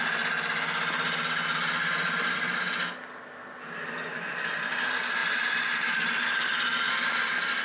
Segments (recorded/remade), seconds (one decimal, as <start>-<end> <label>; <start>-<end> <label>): 0.0-5.2 recorded; 5.2-6.2 remade; 6.2-7.6 recorded